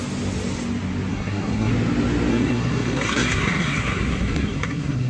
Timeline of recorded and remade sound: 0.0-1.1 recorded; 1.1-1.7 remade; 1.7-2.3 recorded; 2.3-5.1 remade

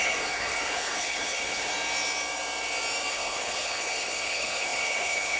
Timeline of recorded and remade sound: 0.0-1.7 remade; 1.7-3.1 recorded; 3.1-5.4 remade

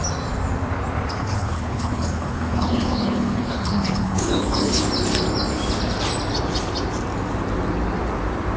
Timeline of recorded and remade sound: 0.0-1.2 recorded; 1.2-4.8 remade; 4.8-8.6 recorded

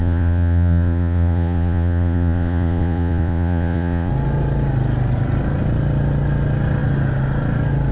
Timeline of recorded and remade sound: 0.0-4.1 remade; 4.1-7.9 recorded

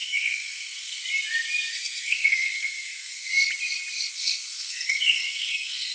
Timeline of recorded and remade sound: 0.0-1.0 remade; 1.0-1.7 recorded; 1.7-3.3 remade; 3.3-4.1 recorded; 4.1-5.9 remade

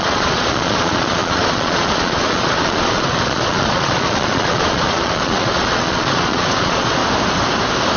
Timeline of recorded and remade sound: 0.0-7.0 remade; 7.0-8.0 recorded

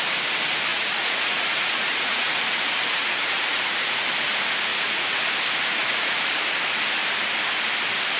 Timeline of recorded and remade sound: 0.0-0.7 recorded; 0.7-4.1 remade; 4.1-4.7 recorded; 4.7-5.2 remade; 5.2-5.8 recorded; 5.8-6.3 remade; 6.3-8.2 recorded

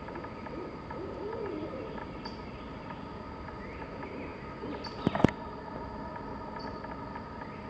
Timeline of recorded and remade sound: 0.0-7.7 recorded